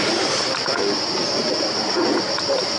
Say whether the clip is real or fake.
real